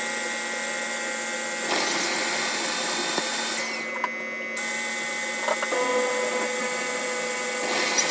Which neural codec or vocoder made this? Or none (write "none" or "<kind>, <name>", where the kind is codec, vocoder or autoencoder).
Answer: none